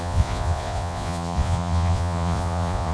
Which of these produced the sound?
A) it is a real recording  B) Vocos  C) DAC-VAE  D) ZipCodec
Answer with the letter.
B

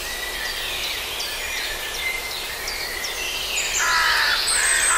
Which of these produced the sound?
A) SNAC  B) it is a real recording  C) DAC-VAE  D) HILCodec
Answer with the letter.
B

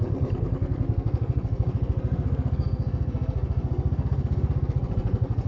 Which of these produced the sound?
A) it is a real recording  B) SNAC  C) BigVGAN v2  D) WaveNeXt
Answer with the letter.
B